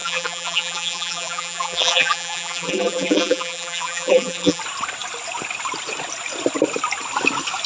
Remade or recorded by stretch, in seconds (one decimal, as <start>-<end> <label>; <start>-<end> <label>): 0.0-4.6 remade; 4.6-7.7 recorded